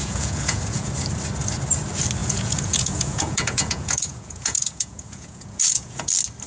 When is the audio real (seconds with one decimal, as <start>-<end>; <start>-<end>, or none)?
0.9-2.2; 6.1-6.5